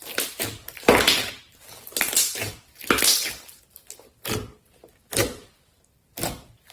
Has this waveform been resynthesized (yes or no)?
no